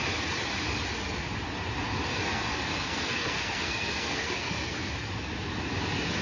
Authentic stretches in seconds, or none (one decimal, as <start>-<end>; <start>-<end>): 0.0-2.1; 4.9-6.2